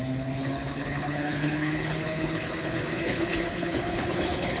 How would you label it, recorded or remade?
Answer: remade